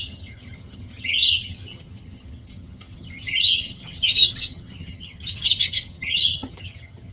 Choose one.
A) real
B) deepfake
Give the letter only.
B